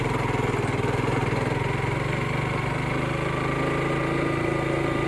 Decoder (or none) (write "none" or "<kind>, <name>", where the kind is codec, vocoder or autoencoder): none